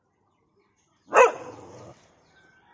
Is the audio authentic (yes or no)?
yes